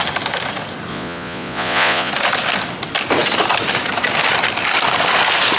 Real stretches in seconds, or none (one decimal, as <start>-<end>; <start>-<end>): 0.0-0.9; 2.1-5.6